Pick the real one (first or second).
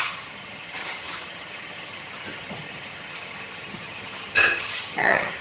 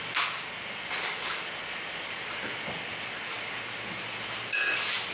second